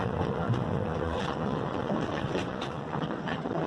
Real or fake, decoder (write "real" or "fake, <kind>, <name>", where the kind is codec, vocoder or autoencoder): fake, vocoder, WaveNeXt